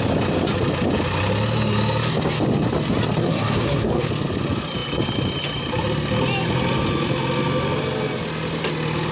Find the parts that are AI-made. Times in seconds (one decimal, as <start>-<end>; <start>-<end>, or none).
3.2-4.1